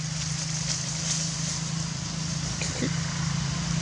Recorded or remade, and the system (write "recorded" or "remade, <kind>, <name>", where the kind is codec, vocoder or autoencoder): recorded